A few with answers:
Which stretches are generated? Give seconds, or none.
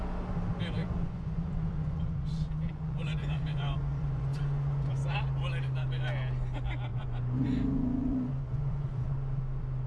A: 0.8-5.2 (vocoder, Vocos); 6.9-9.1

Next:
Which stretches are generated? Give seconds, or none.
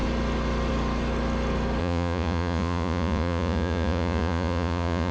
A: 1.8-5.1 (vocoder, Vocos)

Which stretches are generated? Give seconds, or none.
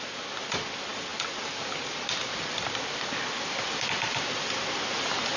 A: none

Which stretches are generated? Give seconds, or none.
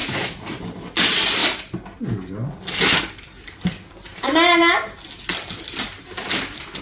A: 0.0-0.6 (vocoder, Vocos)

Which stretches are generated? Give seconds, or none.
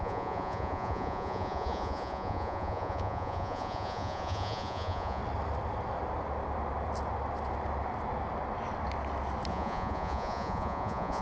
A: 0.0-5.2 (vocoder, Vocos); 9.5-11.2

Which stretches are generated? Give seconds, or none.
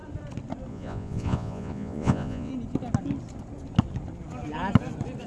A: 0.7-2.5 (vocoder, Vocos)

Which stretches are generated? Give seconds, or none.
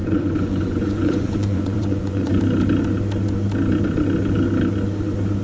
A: 0.0-2.4 (vocoder, Vocos)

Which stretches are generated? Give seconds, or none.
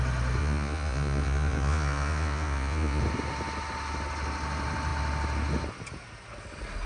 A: 0.4-3.0 (vocoder, Vocos)